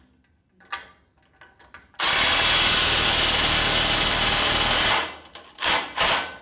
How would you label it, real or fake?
real